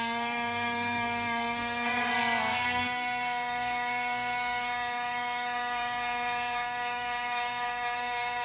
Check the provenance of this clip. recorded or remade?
remade